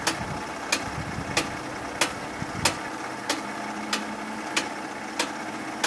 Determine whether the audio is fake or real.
real